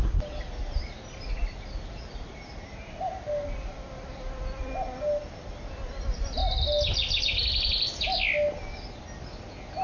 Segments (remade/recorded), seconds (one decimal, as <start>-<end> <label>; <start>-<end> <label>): 0.0-9.8 recorded